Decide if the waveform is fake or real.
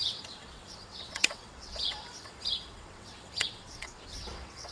fake